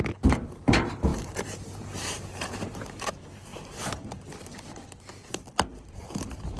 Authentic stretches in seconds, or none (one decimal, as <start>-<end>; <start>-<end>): 0.0-1.1; 3.1-5.7